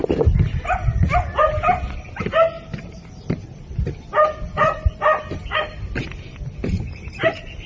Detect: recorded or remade recorded